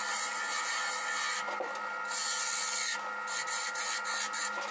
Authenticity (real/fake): real